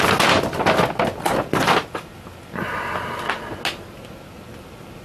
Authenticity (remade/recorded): recorded